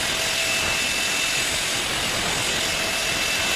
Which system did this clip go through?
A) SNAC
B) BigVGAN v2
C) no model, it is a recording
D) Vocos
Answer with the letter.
C